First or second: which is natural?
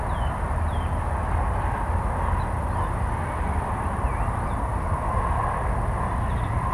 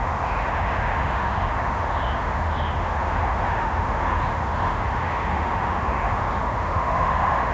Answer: first